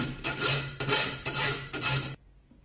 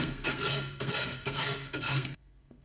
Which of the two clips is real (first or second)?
first